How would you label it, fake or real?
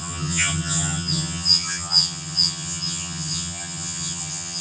fake